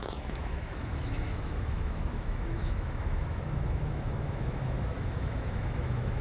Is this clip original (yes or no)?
no